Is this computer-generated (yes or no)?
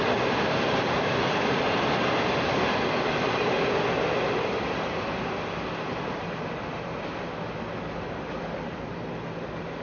no